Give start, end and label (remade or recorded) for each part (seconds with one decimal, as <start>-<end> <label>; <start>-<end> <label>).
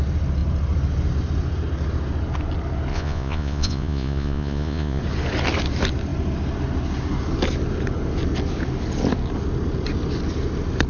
0.0-2.9 recorded; 2.9-5.0 remade; 5.0-10.9 recorded